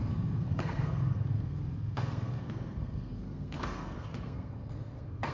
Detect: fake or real fake